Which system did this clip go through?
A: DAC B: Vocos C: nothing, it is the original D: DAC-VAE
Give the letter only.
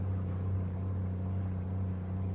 C